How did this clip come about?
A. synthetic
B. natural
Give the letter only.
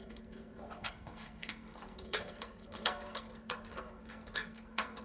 A